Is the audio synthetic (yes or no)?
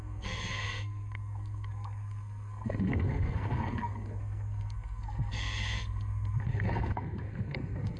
yes